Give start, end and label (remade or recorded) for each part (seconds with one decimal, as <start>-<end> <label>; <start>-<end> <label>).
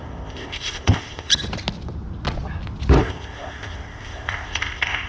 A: 0.0-1.3 remade; 1.3-3.0 recorded; 3.0-5.1 remade